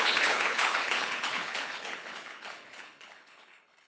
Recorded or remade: remade